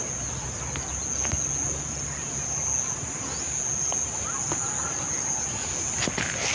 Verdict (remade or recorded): recorded